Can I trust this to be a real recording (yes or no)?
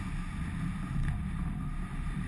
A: yes